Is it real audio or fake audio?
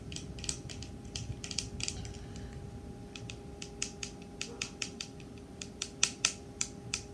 real